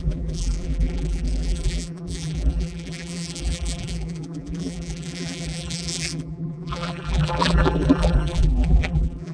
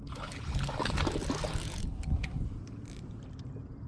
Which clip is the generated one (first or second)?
first